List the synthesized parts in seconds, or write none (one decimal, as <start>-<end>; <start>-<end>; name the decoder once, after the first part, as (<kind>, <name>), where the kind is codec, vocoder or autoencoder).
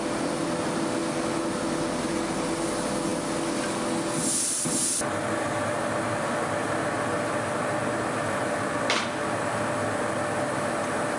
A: none